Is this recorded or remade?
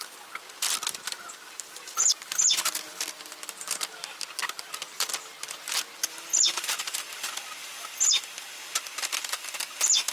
recorded